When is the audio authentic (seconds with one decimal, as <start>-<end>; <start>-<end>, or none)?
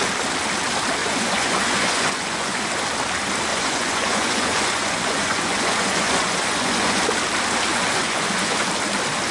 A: 0.0-1.0; 2.6-3.5; 7.0-7.7; 8.7-9.3